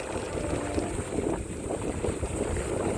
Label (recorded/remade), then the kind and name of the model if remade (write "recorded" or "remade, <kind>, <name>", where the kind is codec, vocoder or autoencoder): recorded